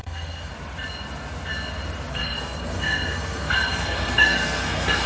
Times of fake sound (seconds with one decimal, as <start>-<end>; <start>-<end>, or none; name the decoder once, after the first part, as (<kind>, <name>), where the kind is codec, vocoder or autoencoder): 0.0-0.5 (codec, SNAC); 2.1-5.1